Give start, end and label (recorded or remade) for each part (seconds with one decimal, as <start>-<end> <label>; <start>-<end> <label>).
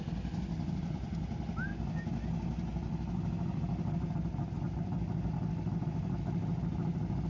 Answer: 0.0-7.3 recorded